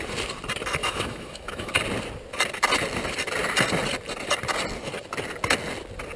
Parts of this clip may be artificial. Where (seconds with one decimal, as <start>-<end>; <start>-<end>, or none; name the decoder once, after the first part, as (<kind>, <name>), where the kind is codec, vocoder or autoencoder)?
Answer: 0.8-1.7 (autoencoder, DAC-VAE)